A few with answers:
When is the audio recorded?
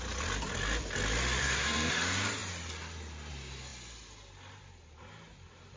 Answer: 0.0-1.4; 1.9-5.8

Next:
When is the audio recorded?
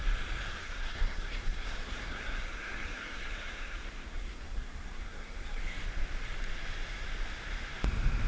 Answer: 0.0-0.6; 5.6-8.3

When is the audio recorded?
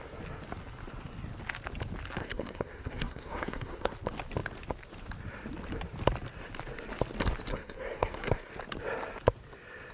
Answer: 0.0-2.2; 3.9-7.5; 8.5-9.9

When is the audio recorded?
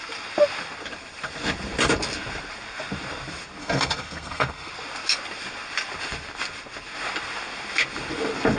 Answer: 0.0-3.6; 4.7-8.6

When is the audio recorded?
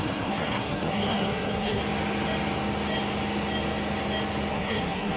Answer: 1.8-4.5